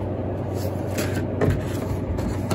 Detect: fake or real real